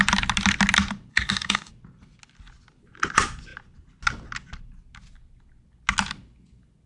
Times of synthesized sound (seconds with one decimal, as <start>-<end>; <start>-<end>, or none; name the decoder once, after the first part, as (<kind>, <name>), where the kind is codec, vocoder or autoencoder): 1.1-1.7 (codec, DAC)